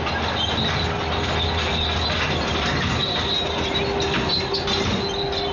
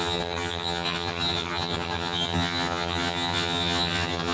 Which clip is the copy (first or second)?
second